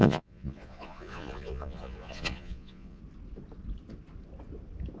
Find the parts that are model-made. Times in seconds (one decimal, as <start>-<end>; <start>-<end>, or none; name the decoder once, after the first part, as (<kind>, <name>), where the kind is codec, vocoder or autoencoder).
0.0-3.0 (vocoder, Vocos)